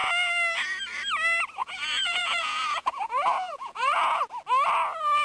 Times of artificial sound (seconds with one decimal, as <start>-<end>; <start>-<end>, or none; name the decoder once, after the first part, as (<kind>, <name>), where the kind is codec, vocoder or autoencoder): 1.6-4.2 (vocoder, Vocos)